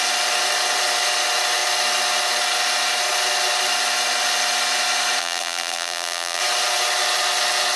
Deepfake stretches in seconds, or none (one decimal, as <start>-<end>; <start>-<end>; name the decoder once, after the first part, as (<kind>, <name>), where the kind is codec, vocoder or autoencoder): 5.2-6.4 (vocoder, BigVGAN v2)